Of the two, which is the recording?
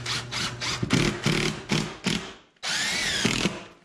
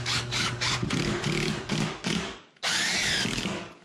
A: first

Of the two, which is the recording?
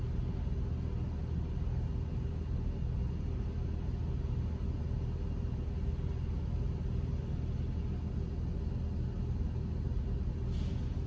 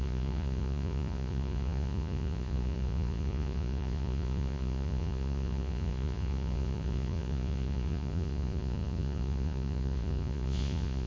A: first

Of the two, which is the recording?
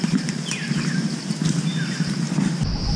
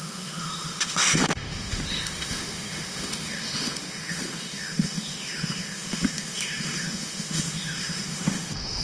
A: first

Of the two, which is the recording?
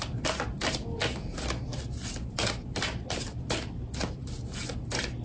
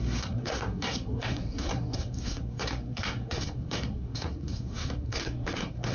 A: first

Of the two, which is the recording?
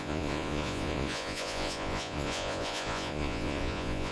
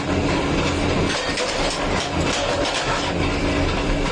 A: second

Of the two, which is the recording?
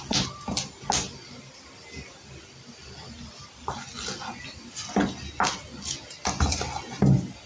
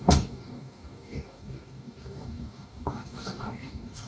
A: first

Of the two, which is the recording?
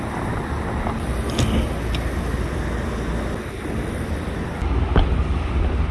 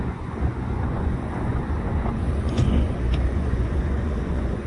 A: first